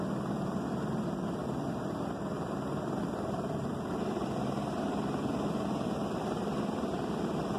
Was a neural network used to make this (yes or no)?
yes